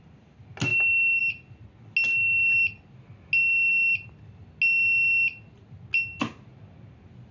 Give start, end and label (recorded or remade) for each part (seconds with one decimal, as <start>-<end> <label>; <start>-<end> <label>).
0.0-7.3 recorded